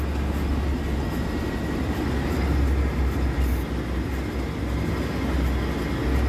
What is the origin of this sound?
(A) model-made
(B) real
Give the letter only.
B